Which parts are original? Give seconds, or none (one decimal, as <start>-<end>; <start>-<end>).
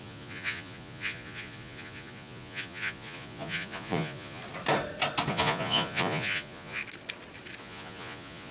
4.4-5.3; 6.8-7.6